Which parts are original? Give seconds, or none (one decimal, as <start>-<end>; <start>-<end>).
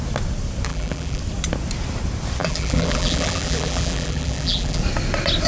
0.0-0.7; 1.2-2.4; 4.8-5.5